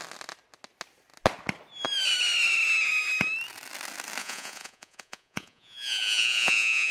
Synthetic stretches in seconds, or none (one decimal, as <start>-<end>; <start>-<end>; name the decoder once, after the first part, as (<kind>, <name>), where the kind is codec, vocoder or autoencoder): 4.2-6.9 (vocoder, Vocos)